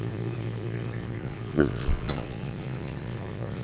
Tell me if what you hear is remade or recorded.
remade